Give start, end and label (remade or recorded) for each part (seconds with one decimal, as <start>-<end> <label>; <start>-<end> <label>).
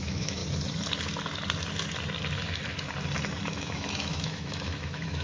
0.0-0.4 remade; 0.4-3.5 recorded; 3.5-5.2 remade